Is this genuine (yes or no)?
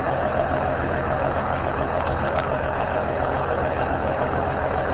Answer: no